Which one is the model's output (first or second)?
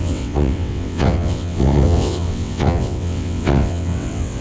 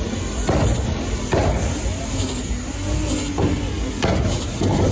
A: first